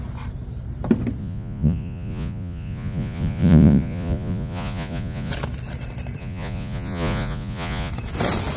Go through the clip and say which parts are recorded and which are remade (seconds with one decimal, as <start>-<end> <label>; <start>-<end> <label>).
0.0-1.2 recorded; 1.2-5.3 remade; 5.3-6.2 recorded; 6.2-7.9 remade; 7.9-8.6 recorded